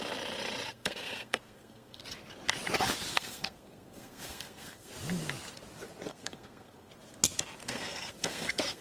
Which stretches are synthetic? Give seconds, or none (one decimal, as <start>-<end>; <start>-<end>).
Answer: 0.7-2.0; 3.1-4.9; 6.1-6.9; 7.6-8.8